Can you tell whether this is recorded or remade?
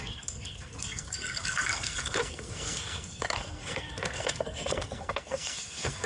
remade